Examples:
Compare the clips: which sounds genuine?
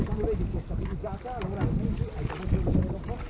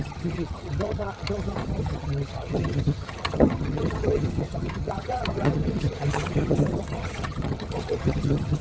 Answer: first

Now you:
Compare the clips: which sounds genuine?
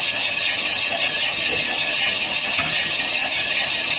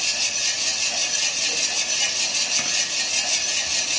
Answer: second